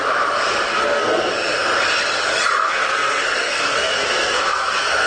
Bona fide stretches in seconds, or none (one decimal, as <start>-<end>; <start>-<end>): 0.0-0.7; 1.3-2.5